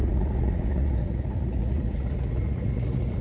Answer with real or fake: fake